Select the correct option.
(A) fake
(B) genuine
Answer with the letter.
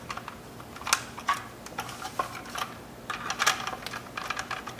B